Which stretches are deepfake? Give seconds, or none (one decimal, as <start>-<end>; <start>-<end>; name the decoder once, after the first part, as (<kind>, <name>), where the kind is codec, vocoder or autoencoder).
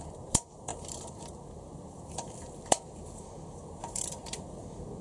0.0-5.0 (vocoder, BigVGAN v2)